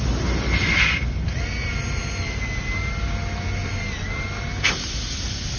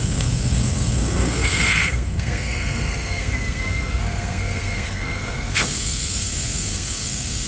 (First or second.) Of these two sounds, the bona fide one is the first